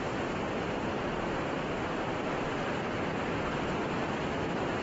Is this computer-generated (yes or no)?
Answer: yes